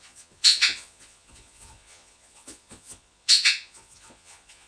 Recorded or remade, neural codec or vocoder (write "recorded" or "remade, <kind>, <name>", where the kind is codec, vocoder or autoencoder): remade, vocoder, Vocos